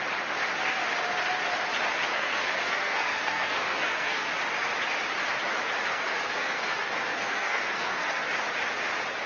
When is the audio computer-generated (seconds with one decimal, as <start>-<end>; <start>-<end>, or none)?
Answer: 2.1-4.3; 5.9-8.3